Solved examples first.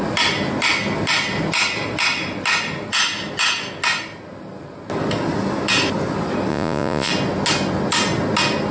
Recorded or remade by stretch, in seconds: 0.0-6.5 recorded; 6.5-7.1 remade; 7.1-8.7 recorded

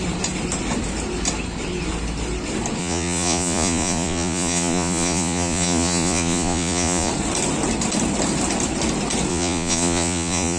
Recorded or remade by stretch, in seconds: 0.0-2.8 recorded; 2.8-7.1 remade; 7.1-9.3 recorded; 9.3-10.6 remade

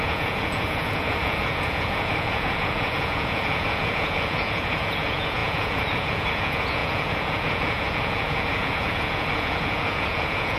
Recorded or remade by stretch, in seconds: 0.0-10.6 remade

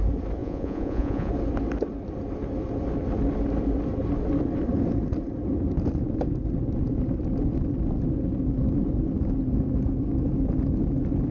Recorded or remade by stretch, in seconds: 0.0-0.4 recorded; 0.4-1.3 remade; 1.3-11.3 recorded

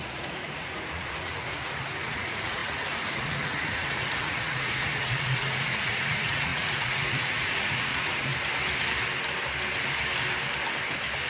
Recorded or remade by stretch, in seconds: 0.0-8.3 remade; 8.3-11.3 recorded

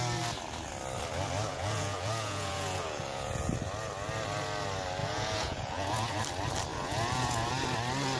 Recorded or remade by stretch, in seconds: 0.0-1.5 recorded; 1.5-3.5 remade; 3.5-5.0 recorded; 5.0-6.2 remade; 6.2-6.7 recorded; 6.7-7.5 remade; 7.5-8.2 recorded

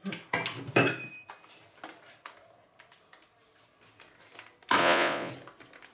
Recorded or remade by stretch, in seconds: 0.0-4.8 recorded; 4.8-5.3 remade; 5.3-5.9 recorded

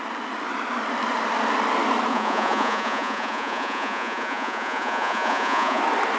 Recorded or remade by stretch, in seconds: 0.0-2.1 recorded; 2.1-5.8 remade; 5.8-6.2 recorded